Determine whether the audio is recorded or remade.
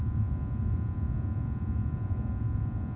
remade